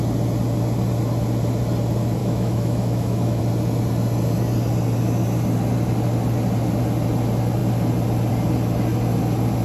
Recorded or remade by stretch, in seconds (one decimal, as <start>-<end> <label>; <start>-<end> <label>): 0.0-2.2 recorded; 2.2-3.4 remade; 3.4-9.6 recorded